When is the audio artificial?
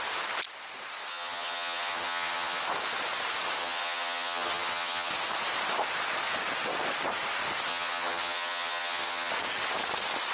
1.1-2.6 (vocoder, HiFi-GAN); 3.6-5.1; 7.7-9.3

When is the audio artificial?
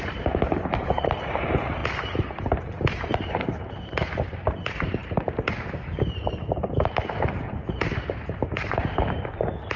0.0-1.8 (vocoder, BigVGAN v2); 3.2-9.8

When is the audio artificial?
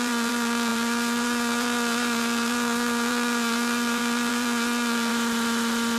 0.0-5.1 (vocoder, BigVGAN v2)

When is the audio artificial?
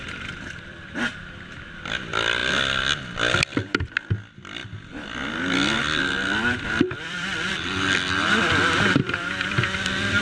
0.0-2.4 (vocoder, BigVGAN v2); 3.0-4.6; 6.4-10.2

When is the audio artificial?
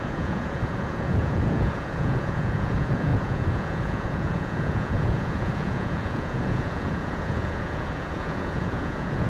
0.0-9.3 (vocoder, Vocos)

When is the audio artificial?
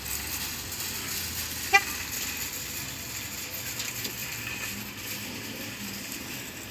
4.2-4.8 (vocoder, BigVGAN v2)